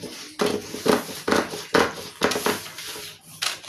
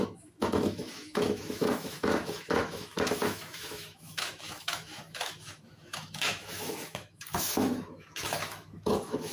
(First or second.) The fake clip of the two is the second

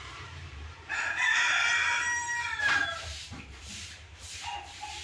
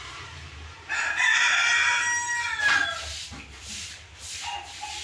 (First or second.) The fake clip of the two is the first